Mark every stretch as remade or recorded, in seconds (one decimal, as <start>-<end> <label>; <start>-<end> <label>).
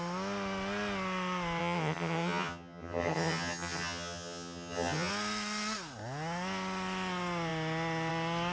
0.0-1.6 recorded; 1.6-5.1 remade; 5.1-8.5 recorded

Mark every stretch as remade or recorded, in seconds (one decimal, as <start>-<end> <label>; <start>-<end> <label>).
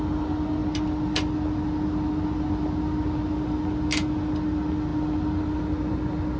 0.0-6.4 recorded